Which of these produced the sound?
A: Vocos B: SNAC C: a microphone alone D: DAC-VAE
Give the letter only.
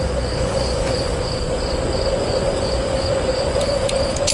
A